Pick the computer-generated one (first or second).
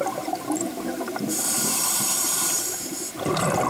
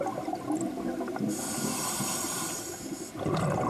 first